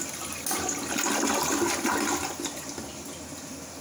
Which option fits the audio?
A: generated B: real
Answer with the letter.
B